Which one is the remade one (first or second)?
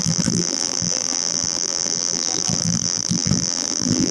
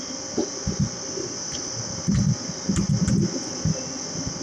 first